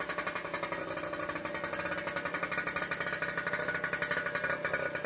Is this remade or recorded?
recorded